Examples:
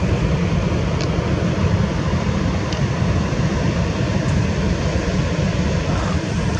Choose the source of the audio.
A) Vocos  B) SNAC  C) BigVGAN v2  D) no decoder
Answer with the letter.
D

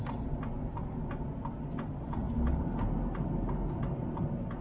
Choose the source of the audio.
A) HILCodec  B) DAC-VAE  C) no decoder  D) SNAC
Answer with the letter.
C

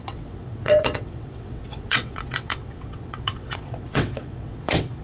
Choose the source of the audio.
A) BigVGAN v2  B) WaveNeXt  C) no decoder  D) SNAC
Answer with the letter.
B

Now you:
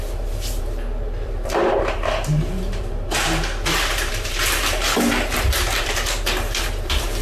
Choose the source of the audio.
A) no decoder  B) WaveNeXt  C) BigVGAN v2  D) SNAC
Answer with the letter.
C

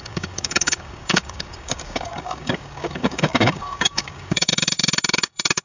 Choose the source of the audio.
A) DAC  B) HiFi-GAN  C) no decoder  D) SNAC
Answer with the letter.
A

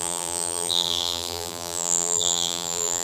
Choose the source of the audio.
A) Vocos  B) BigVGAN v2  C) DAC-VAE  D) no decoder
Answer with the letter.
B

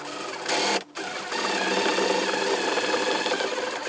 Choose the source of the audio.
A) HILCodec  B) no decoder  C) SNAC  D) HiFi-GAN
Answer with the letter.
B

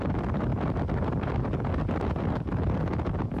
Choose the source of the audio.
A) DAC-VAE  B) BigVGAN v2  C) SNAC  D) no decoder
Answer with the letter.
D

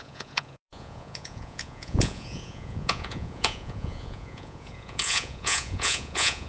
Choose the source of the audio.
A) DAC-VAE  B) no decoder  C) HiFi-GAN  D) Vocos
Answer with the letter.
D